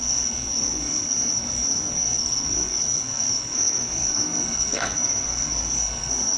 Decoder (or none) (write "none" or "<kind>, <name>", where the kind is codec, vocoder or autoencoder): codec, SNAC